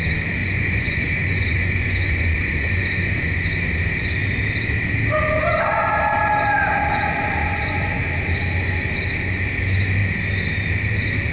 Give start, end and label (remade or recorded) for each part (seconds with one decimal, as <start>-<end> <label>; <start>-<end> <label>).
0.0-0.4 recorded; 0.4-3.7 remade; 3.7-7.4 recorded; 7.4-8.0 remade; 8.0-11.3 recorded